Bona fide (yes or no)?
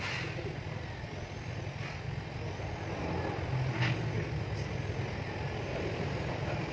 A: yes